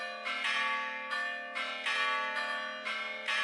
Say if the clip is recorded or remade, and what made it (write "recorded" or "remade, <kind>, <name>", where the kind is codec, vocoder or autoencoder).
recorded